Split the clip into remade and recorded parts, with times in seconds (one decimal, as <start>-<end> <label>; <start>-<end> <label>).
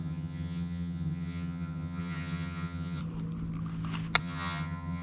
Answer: 0.0-3.0 remade; 3.0-4.2 recorded; 4.2-5.0 remade